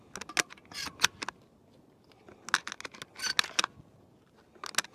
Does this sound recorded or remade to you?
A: recorded